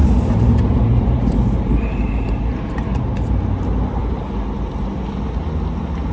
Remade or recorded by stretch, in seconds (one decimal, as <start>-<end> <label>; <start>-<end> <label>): 0.0-3.3 remade; 3.3-6.1 recorded